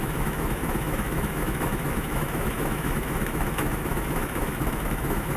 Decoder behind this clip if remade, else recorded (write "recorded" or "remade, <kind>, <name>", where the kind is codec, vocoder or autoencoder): remade, autoencoder, DAC-VAE